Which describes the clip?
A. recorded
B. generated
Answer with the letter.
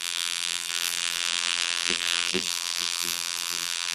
B